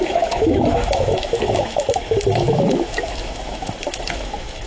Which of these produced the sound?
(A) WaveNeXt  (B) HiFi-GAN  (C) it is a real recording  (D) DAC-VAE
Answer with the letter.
D